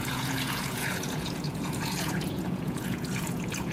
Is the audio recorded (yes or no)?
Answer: no